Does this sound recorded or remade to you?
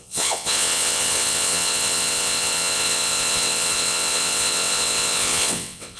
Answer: remade